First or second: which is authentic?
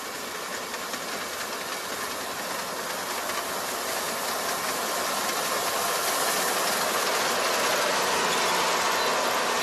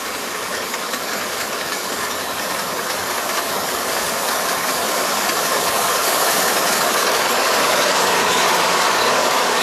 first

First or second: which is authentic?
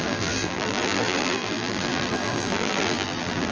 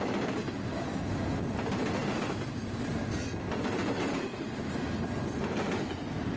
second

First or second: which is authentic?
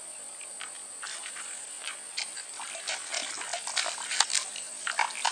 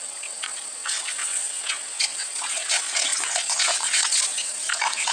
first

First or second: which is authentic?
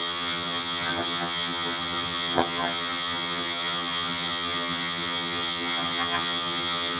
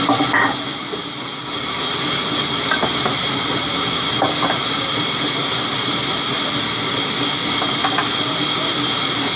second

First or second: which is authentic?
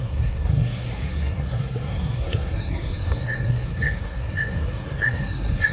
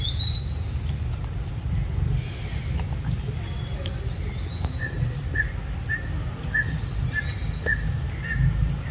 second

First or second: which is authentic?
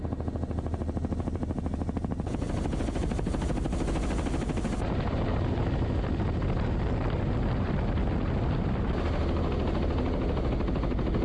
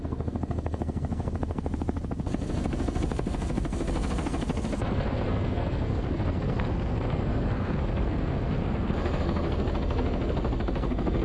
first